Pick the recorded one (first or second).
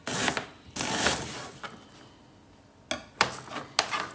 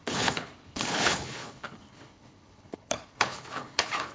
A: first